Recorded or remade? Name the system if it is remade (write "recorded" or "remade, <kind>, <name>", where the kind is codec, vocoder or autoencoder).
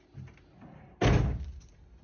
recorded